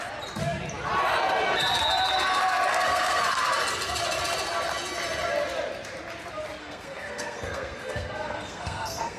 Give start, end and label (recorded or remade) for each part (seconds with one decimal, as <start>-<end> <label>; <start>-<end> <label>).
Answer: 0.0-2.7 recorded; 2.7-3.2 remade; 3.2-6.6 recorded; 6.6-9.2 remade